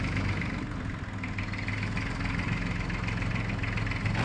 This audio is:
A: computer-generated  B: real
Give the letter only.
B